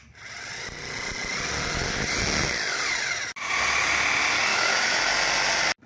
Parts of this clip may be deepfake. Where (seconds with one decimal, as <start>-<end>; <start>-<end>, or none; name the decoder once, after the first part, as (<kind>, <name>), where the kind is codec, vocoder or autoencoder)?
4.5-5.0 (autoencoder, DAC-VAE)